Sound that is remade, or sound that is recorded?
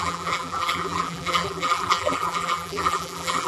remade